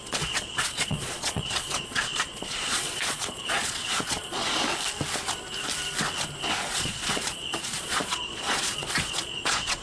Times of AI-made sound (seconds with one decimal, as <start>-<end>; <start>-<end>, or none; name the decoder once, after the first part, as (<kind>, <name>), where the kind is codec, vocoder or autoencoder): 0.0-4.4 (vocoder, Vocos); 6.6-9.8